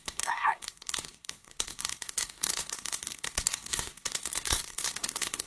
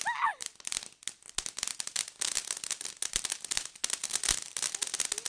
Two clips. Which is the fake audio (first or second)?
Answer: first